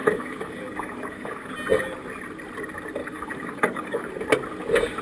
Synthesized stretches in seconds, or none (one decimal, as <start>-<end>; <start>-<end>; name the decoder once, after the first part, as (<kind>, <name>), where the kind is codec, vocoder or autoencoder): 0.0-1.5 (codec, DAC); 3.0-4.1